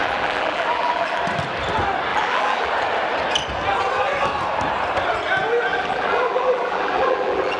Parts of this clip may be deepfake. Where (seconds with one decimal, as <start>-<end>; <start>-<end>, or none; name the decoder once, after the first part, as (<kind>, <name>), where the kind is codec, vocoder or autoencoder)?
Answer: 0.0-1.2 (vocoder, BigVGAN v2); 2.1-2.7; 5.7-7.6